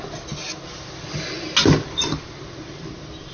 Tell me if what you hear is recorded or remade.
recorded